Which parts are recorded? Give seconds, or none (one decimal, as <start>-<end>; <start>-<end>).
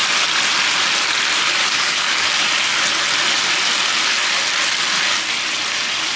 0.0-1.6; 2.3-6.2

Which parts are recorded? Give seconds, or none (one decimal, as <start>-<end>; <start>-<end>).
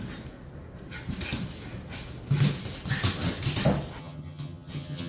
0.0-4.0